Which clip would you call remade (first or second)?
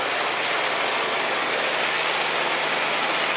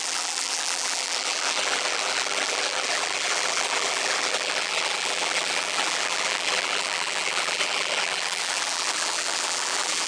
second